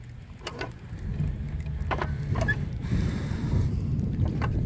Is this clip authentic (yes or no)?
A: no